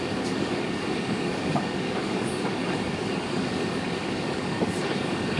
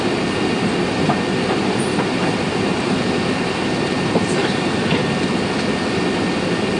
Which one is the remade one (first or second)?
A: first